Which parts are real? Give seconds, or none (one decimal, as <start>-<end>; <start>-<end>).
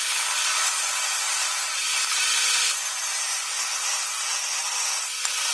0.0-1.3; 3.3-5.5